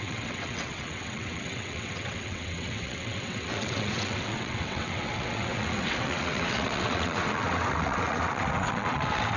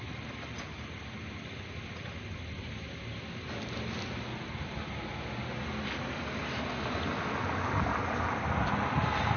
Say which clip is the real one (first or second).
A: second